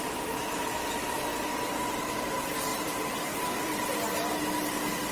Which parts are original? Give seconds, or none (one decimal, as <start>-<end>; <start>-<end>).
0.0-5.1